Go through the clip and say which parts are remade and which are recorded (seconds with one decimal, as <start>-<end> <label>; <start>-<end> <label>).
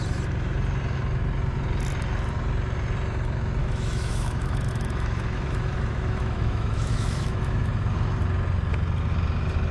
0.0-3.6 recorded; 3.6-7.9 remade; 7.9-9.7 recorded